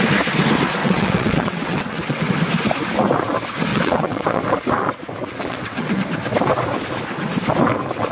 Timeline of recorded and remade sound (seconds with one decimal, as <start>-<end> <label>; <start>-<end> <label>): 0.0-0.8 recorded; 0.8-2.3 remade; 2.3-3.7 recorded; 3.7-4.4 remade; 4.4-5.2 recorded; 5.2-6.0 remade; 6.0-8.1 recorded